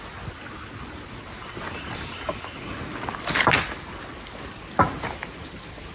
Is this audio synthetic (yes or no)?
no